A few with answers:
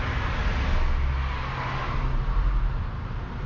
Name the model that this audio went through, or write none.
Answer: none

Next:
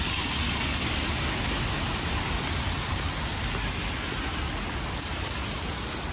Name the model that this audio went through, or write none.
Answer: none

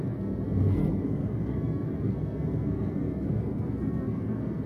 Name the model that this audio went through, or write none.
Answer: codec, SNAC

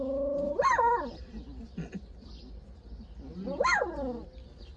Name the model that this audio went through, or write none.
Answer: none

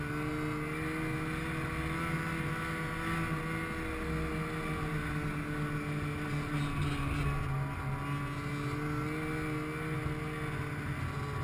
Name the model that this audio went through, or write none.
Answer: none